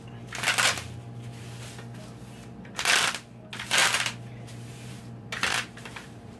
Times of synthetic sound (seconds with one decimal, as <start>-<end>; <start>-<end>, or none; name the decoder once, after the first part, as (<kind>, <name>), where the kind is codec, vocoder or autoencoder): 3.8-6.4 (vocoder, BigVGAN v2)